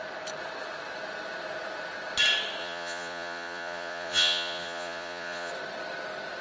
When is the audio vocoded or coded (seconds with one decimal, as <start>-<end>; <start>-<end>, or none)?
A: 2.6-5.5